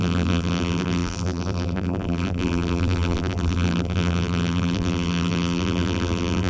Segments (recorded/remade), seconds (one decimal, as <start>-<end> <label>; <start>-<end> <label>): 0.0-6.5 remade